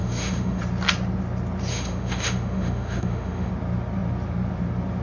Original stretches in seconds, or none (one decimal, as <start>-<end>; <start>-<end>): 0.6-1.7; 3.5-5.0